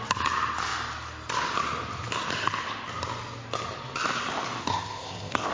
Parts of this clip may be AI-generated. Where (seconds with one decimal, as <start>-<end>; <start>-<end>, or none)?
4.6-5.5